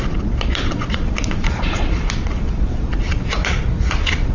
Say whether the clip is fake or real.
fake